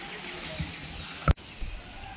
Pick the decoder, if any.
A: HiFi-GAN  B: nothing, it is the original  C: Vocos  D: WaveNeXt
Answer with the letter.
B